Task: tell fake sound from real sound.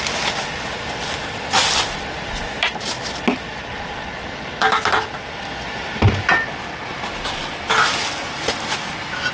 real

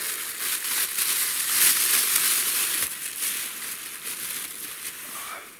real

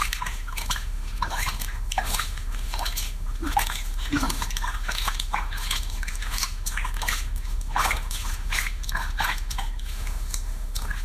fake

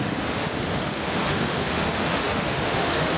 fake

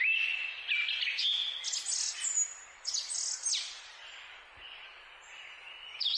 real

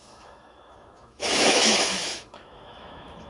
fake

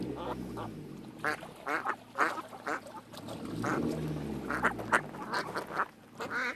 real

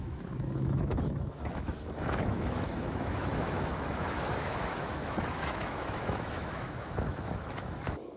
fake